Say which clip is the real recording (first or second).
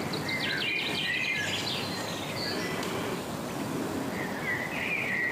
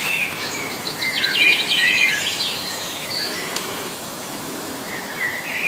first